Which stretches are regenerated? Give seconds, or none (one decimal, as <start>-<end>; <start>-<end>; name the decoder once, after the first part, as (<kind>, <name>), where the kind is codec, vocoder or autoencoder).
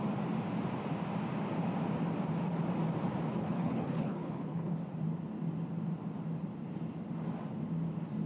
3.3-4.7 (codec, HILCodec)